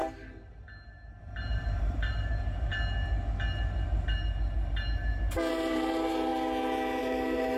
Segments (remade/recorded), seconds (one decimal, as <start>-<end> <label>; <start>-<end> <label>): 0.0-1.4 recorded; 1.4-2.7 remade; 2.7-5.5 recorded; 5.5-6.3 remade; 6.3-7.0 recorded; 7.0-7.6 remade